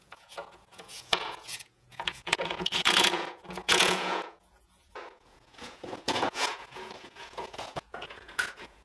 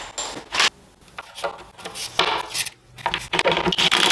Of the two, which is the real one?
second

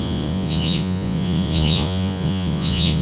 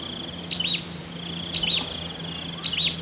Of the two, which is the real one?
second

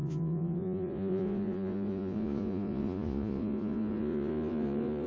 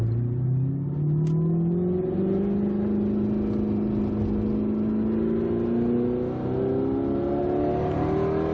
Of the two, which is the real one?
second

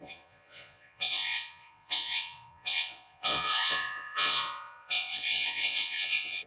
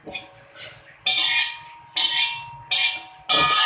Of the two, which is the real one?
second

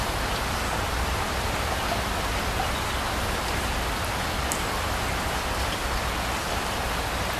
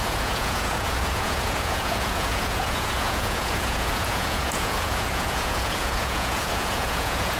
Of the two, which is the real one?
first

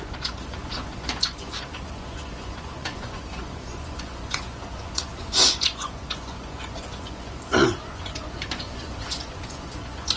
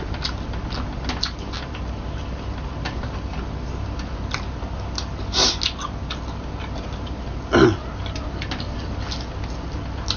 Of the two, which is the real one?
second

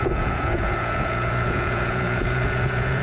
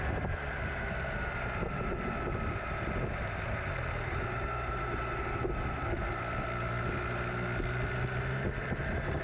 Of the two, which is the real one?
second